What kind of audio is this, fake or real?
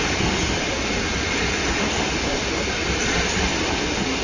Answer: real